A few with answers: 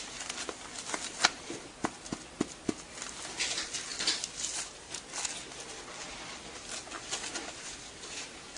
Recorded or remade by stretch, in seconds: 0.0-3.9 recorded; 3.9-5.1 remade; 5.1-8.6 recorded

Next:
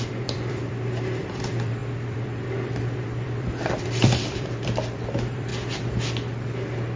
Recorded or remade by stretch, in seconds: 0.0-5.5 remade; 5.5-7.0 recorded

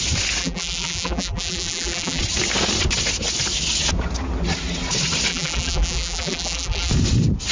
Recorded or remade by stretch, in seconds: 0.0-0.4 recorded; 0.4-2.2 remade; 2.2-5.3 recorded; 5.3-6.9 remade; 6.9-7.5 recorded